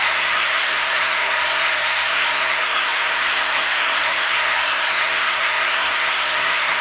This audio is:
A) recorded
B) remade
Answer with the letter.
B